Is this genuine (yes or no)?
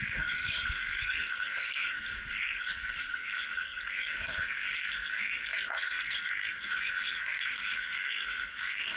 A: no